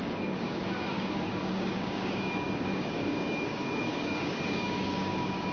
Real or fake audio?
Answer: fake